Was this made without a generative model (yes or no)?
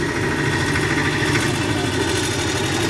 yes